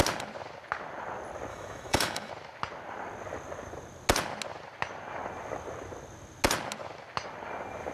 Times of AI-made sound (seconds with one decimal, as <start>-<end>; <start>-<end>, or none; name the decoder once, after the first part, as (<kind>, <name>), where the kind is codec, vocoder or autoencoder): 1.5-2.3 (autoencoder, DAC-VAE)